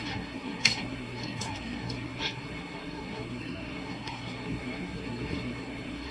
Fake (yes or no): yes